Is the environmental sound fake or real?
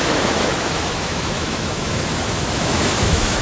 fake